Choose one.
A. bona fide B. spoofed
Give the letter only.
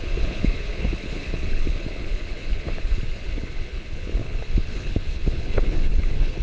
B